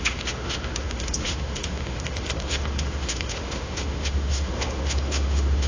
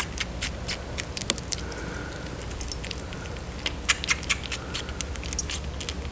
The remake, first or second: first